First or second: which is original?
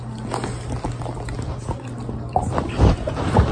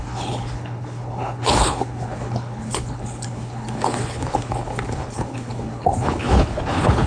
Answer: first